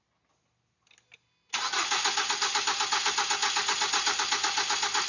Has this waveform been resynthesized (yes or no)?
no